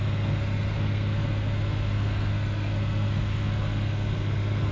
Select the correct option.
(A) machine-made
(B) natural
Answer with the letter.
A